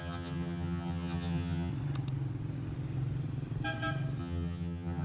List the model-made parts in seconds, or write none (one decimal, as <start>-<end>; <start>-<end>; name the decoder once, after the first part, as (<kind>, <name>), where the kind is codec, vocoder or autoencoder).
0.0-1.7 (vocoder, HiFi-GAN); 4.2-5.0